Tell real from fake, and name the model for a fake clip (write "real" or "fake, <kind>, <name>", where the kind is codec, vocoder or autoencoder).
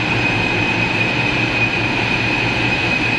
fake, vocoder, BigVGAN v2